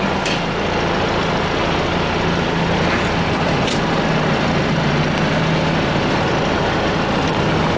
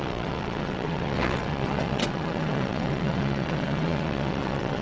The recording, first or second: first